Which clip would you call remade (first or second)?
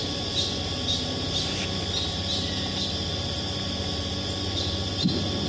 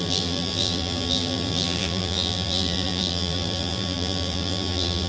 second